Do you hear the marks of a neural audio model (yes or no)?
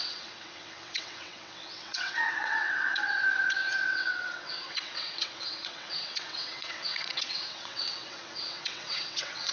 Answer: yes